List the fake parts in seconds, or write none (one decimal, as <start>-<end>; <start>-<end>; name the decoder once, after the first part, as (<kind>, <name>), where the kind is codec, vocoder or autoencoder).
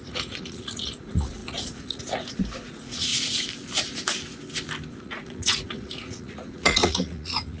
0.0-3.1 (vocoder, Vocos); 5.0-7.6